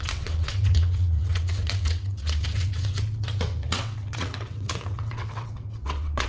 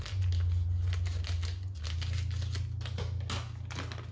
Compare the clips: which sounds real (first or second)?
second